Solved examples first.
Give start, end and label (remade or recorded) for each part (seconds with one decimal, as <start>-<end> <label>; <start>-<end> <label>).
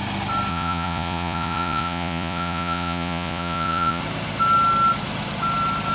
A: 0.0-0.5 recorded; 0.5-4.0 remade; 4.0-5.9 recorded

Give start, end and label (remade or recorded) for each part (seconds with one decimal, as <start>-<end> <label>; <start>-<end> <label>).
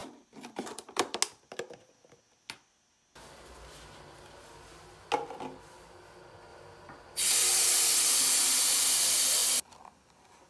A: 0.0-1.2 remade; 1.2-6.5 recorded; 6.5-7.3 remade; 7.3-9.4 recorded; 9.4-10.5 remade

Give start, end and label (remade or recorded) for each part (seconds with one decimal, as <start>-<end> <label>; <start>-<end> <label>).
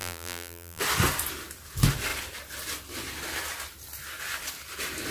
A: 0.0-0.8 remade; 0.8-5.1 recorded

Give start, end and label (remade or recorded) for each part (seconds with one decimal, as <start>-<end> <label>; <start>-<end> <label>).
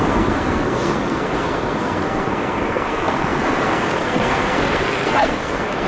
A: 0.0-5.9 remade